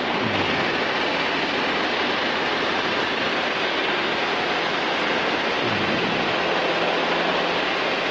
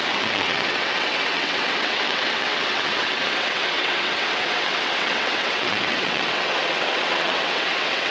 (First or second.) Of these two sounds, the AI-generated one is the second